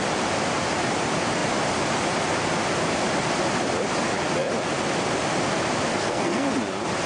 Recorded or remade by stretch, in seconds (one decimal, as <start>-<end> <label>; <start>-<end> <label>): 0.0-5.9 recorded; 5.9-6.5 remade; 6.5-7.1 recorded